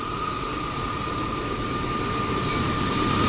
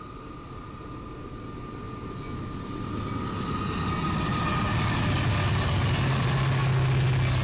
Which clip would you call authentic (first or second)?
second